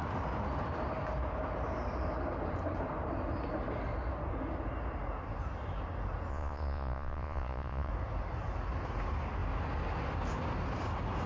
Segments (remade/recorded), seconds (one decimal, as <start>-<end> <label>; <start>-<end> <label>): 0.0-6.3 recorded; 6.3-7.9 remade; 7.9-11.3 recorded